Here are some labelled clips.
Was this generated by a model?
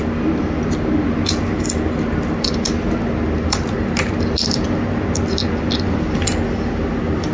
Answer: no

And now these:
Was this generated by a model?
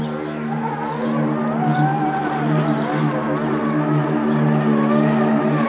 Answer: no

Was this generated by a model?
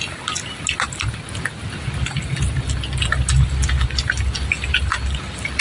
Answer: no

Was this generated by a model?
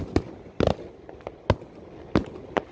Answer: no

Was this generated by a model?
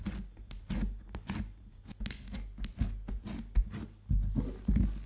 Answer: no